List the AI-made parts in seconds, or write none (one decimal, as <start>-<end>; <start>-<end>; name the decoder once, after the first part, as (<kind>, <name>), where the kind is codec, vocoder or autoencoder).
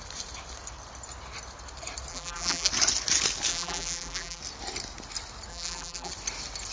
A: 2.1-2.7 (vocoder, BigVGAN v2); 3.5-4.4; 5.5-6.1